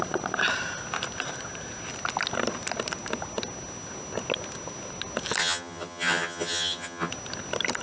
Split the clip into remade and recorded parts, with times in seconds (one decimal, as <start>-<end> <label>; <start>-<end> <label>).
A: 0.0-5.4 recorded; 5.4-7.1 remade; 7.1-7.8 recorded